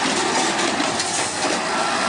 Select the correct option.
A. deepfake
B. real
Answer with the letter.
A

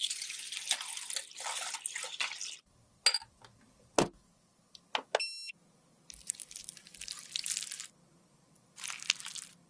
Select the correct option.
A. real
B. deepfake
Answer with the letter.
A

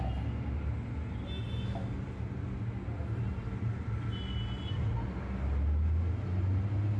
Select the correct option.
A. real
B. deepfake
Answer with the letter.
A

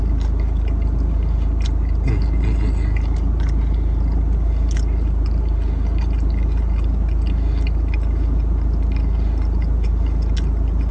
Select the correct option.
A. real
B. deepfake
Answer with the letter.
A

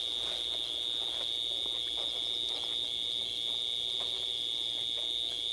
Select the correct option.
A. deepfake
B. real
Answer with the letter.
B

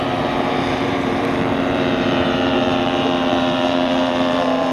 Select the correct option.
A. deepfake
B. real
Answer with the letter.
A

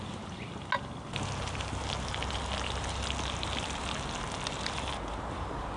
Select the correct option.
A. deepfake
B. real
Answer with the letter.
B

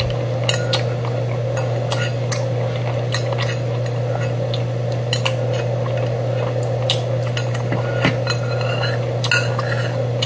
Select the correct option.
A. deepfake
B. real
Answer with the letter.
B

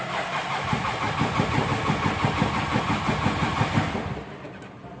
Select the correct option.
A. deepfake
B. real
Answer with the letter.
B